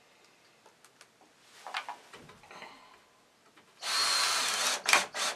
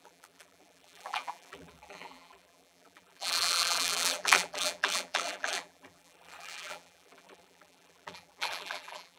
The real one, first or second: first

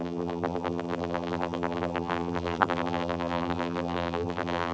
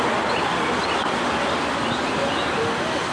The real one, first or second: second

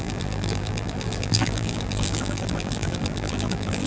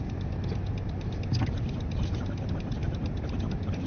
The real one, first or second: second